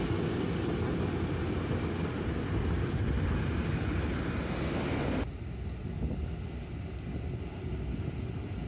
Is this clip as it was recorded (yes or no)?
yes